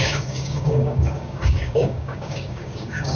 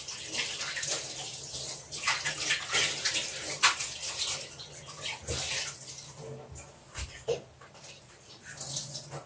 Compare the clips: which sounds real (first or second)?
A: second